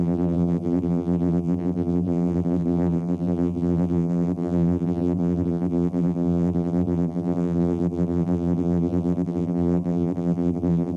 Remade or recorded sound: remade